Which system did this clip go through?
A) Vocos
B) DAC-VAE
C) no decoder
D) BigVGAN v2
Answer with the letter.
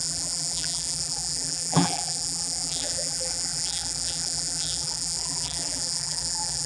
D